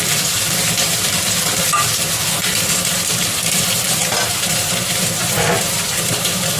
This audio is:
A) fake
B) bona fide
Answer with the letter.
A